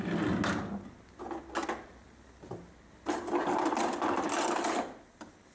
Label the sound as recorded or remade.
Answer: recorded